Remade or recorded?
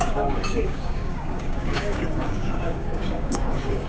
remade